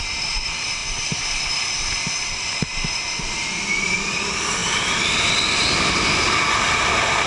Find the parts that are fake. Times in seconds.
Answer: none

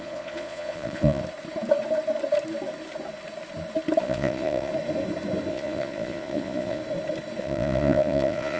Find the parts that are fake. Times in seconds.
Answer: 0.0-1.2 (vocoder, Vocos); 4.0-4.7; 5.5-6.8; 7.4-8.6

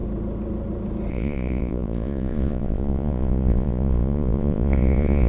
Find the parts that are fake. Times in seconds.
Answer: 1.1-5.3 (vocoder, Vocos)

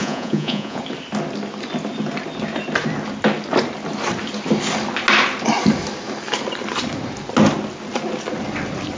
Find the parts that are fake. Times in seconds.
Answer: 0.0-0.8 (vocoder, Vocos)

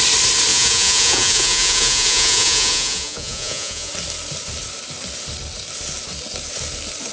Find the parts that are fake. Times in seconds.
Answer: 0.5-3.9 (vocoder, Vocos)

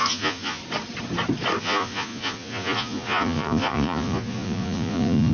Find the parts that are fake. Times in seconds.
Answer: 0.0-0.6 (vocoder, Vocos); 1.6-5.3